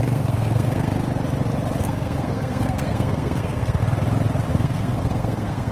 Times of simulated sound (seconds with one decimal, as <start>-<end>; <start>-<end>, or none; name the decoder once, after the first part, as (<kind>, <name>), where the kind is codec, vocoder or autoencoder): 0.0-0.9 (codec, SNAC); 1.8-3.8; 4.5-5.7

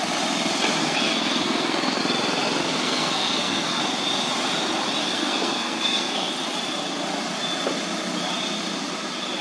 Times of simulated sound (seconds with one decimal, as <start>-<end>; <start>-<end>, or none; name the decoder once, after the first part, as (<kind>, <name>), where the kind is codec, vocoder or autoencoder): 0.8-2.0 (codec, SNAC); 2.6-3.8; 5.0-6.3